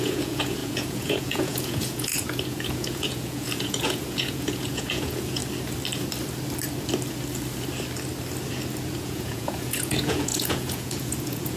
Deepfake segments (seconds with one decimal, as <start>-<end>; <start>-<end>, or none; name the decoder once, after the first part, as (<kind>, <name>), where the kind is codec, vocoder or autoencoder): 0.0-5.4 (vocoder, Vocos); 9.0-11.6